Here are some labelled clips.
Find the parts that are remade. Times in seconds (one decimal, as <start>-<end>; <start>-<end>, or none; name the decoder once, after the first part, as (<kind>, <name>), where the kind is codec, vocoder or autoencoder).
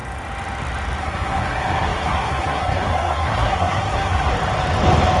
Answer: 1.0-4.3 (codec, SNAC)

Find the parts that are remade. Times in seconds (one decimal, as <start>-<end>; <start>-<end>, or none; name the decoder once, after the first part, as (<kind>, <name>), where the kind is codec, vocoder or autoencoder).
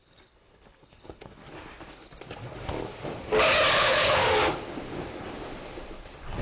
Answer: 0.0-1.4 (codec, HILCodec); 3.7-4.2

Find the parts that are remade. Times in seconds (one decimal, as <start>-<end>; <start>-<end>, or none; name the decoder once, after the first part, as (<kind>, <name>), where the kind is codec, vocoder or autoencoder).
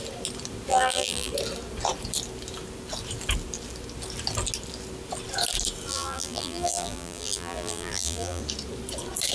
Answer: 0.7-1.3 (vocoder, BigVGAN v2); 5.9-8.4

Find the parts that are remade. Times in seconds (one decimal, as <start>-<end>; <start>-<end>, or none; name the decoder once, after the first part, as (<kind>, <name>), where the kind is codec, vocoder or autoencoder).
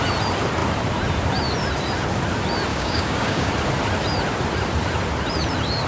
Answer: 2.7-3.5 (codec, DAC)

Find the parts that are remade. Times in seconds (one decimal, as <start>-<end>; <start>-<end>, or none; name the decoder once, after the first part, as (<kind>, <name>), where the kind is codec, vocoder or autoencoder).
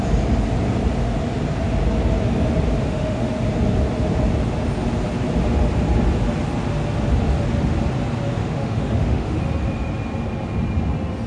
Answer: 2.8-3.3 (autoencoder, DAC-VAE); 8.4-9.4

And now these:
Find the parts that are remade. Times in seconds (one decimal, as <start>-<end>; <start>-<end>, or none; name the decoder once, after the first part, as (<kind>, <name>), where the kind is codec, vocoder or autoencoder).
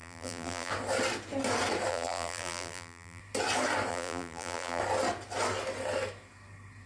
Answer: 0.0-0.7 (vocoder, BigVGAN v2); 1.9-3.2; 3.9-4.8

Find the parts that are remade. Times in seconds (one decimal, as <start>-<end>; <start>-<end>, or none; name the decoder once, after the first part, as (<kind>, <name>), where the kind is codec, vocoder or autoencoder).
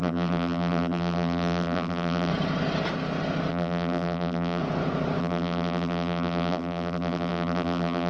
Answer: 0.0-2.3 (vocoder, BigVGAN v2); 3.5-4.6; 5.2-8.1